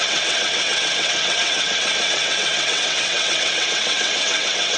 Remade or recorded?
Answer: remade